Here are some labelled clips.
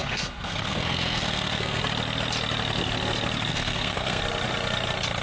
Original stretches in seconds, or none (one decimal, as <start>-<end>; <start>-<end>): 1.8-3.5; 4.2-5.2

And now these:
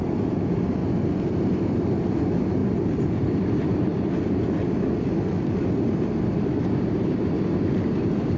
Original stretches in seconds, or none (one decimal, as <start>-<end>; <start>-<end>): 0.8-1.3; 2.6-3.2; 3.9-6.6

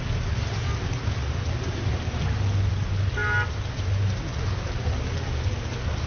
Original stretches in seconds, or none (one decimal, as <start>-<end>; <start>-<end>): 0.0-6.1